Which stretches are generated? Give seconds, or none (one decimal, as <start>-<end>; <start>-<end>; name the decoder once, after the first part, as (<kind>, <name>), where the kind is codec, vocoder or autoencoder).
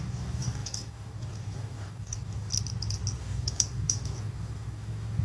0.0-2.5 (codec, DAC); 3.2-5.2